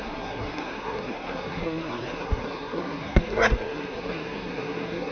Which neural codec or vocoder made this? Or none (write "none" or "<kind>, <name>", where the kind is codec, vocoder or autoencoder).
codec, SNAC